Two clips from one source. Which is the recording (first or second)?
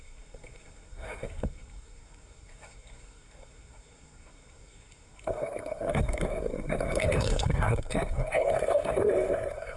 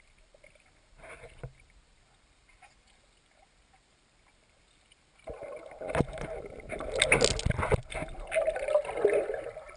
second